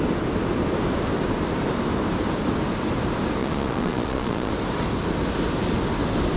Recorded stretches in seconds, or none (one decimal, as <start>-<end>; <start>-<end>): 0.0-3.4; 4.5-6.4